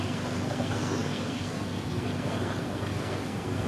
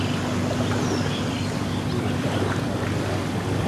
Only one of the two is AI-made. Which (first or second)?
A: first